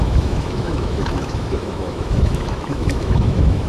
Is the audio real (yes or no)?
no